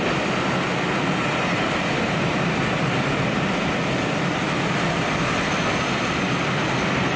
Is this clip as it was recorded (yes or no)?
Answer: yes